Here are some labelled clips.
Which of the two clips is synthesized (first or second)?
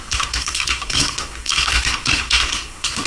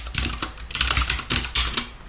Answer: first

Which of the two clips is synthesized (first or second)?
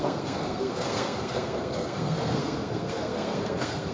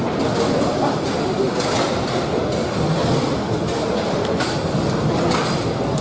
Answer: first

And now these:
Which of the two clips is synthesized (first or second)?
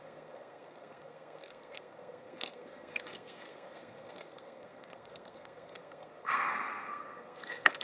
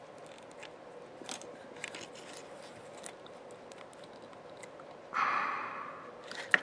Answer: first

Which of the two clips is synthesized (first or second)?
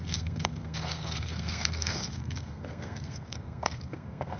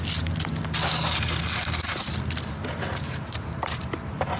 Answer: first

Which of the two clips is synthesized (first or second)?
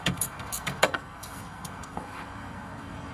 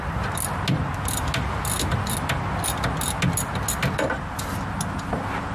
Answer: first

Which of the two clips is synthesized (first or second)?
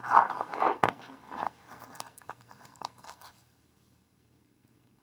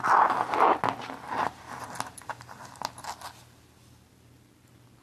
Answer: first